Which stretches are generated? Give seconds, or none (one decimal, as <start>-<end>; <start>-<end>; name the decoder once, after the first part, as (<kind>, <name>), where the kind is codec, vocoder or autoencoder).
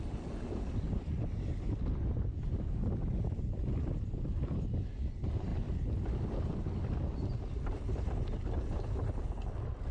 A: none